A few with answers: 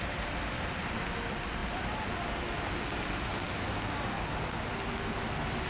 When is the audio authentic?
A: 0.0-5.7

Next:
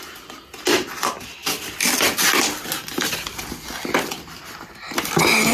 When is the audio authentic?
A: 0.0-5.5

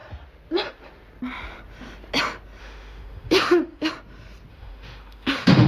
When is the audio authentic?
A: 0.0-2.6; 3.9-4.5